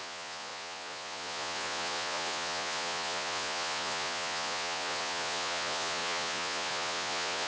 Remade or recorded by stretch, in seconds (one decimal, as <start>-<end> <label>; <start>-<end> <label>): 0.0-7.5 remade